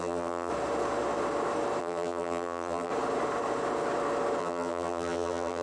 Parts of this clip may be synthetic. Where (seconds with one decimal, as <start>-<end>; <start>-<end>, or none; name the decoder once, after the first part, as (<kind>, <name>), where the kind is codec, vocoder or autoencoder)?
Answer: 0.0-0.5 (vocoder, BigVGAN v2); 1.8-2.9; 4.4-5.6